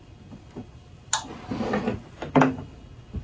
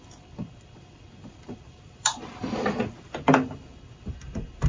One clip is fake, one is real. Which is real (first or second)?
first